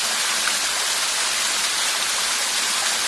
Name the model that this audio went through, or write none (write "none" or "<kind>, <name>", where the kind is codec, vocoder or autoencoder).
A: none